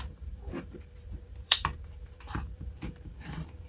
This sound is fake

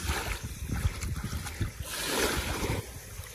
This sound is fake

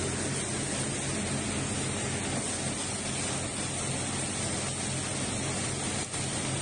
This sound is real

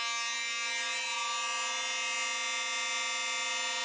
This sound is real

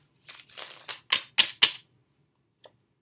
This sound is real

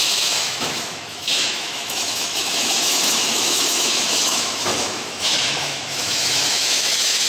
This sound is fake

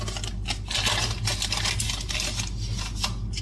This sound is real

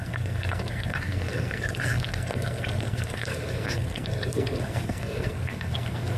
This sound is fake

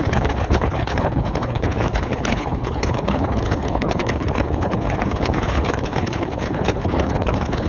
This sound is fake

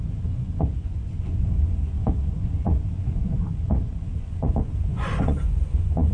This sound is fake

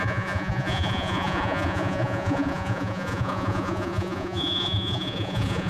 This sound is fake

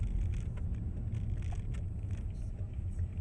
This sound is real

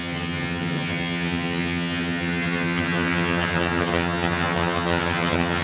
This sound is fake